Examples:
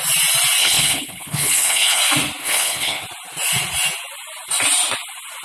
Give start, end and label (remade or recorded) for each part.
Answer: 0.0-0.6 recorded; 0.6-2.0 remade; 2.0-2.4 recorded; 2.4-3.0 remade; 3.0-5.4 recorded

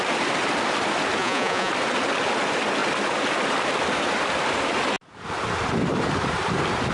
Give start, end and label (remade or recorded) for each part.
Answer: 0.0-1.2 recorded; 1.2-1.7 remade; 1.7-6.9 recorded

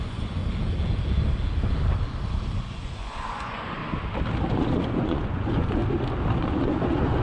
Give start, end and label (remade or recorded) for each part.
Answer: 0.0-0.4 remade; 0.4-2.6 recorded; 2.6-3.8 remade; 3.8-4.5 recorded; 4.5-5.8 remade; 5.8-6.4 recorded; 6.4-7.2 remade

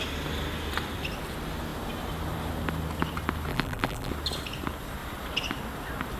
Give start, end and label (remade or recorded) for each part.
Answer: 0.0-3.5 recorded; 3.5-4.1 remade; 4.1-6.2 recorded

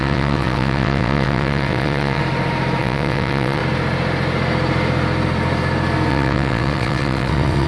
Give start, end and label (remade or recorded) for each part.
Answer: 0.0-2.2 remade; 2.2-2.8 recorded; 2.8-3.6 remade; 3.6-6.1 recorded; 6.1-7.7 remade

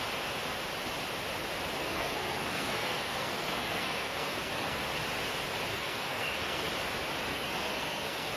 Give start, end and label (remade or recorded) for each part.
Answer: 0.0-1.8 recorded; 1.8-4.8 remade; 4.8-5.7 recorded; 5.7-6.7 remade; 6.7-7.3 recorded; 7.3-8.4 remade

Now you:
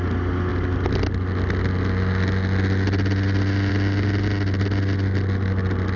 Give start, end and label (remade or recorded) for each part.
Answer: 0.0-6.0 recorded